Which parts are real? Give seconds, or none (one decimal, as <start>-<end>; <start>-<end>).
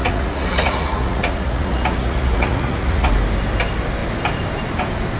3.1-5.2